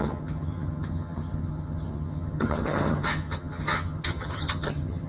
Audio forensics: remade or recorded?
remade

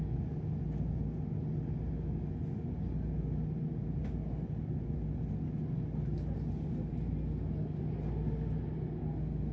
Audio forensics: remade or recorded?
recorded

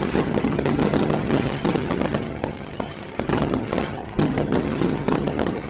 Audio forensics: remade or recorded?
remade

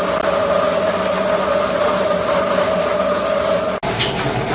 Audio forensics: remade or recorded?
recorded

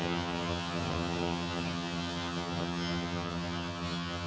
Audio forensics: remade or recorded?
remade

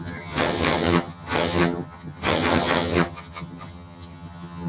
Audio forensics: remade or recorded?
remade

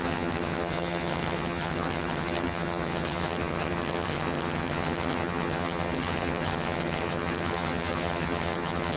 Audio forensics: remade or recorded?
remade